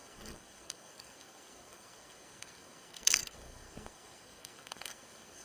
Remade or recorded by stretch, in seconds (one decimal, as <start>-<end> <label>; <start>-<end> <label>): 0.0-5.4 remade